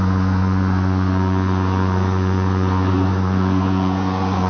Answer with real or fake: fake